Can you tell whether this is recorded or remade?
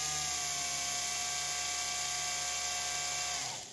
recorded